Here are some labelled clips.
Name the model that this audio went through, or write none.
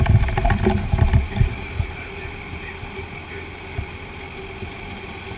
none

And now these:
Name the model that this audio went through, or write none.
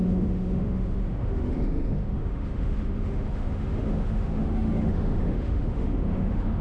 autoencoder, DAC-VAE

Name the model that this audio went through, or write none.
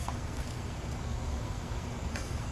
codec, SNAC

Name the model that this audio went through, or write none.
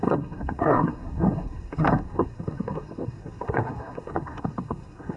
codec, SNAC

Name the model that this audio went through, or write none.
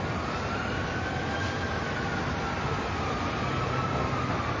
none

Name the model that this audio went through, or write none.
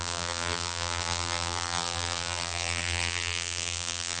vocoder, BigVGAN v2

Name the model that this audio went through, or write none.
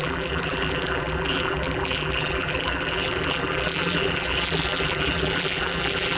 vocoder, BigVGAN v2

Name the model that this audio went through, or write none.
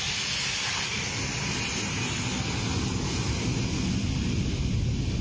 none